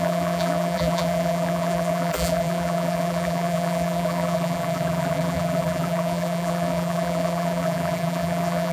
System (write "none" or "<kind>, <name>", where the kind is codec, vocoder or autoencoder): vocoder, BigVGAN v2